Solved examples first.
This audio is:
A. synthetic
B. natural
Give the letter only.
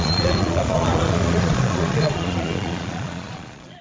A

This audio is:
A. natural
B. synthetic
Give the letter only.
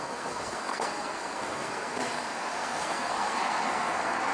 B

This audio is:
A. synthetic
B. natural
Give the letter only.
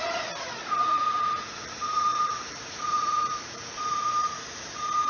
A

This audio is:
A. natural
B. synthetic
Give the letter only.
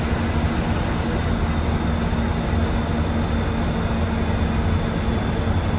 A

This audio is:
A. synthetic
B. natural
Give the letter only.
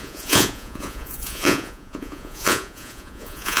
A